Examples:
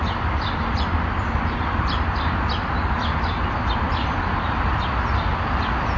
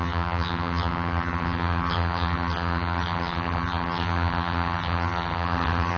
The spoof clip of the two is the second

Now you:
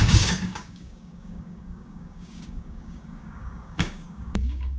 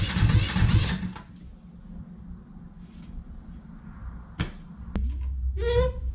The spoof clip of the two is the first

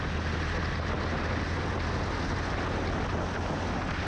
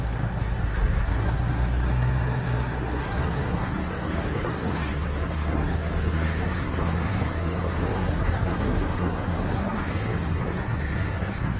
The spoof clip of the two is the second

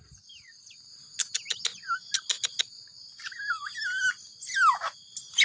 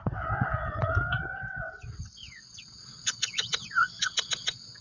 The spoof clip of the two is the second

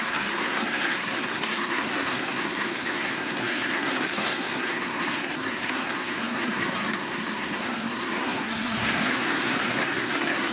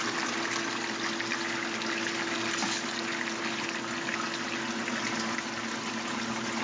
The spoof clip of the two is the first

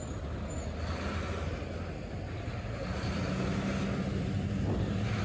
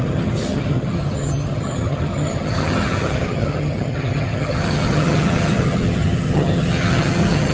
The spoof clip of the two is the second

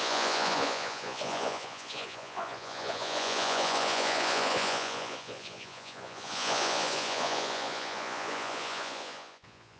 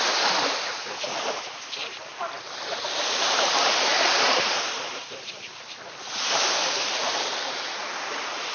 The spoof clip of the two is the first